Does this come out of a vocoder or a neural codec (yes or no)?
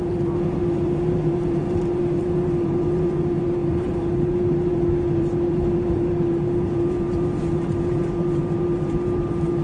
yes